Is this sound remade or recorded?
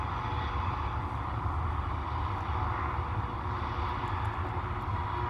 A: recorded